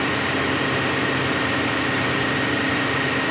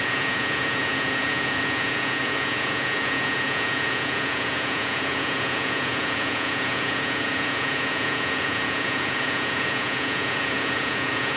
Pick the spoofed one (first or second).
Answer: second